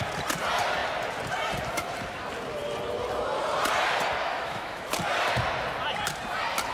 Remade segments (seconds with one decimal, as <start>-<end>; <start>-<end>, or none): 4.2-4.9